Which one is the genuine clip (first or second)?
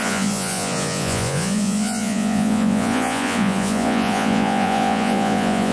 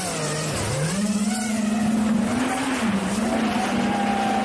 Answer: second